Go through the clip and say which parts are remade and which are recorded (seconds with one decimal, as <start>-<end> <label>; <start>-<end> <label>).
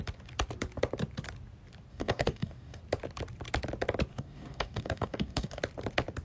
0.0-1.9 recorded; 1.9-2.8 remade; 2.8-4.1 recorded; 4.1-5.6 remade; 5.6-6.2 recorded